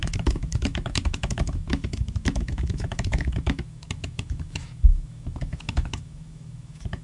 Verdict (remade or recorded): remade